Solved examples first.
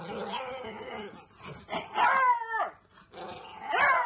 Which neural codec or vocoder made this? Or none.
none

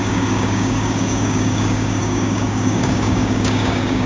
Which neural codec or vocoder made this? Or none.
codec, DAC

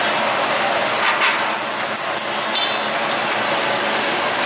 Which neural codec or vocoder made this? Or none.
none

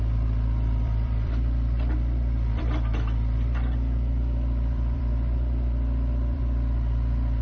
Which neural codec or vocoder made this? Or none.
vocoder, BigVGAN v2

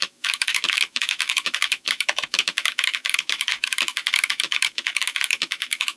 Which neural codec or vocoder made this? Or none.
autoencoder, DAC-VAE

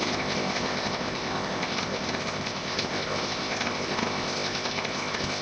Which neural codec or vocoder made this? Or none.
codec, ZipCodec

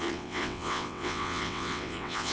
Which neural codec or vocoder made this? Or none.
vocoder, WaveNeXt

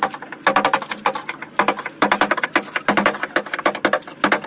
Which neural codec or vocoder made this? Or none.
none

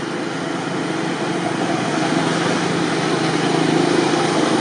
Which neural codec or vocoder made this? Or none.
none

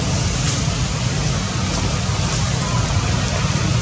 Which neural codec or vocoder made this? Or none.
none